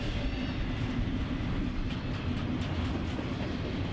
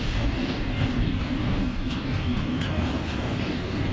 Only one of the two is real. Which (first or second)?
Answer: first